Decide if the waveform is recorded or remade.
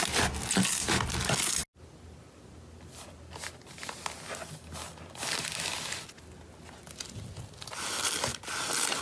recorded